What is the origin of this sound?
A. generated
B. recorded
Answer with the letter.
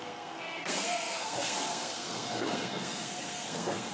A